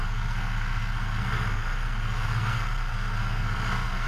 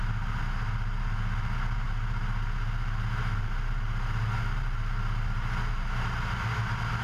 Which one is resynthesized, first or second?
first